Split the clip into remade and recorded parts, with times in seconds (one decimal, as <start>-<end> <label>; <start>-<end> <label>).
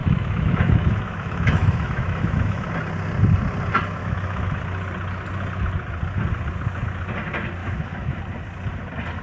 0.0-2.7 remade; 2.7-4.0 recorded; 4.0-4.5 remade; 4.5-7.6 recorded; 7.6-8.2 remade; 8.2-9.2 recorded